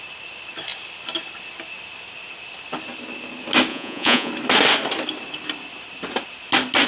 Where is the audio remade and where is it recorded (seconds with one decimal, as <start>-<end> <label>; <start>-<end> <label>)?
0.0-3.7 recorded; 3.7-4.3 remade; 4.3-6.9 recorded